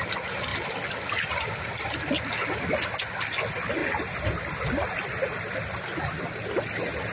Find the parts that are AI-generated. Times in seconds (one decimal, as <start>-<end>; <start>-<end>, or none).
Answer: none